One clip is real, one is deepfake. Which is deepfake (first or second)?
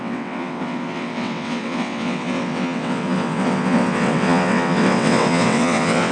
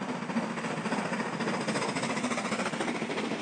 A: first